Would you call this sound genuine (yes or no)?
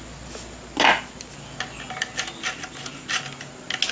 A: yes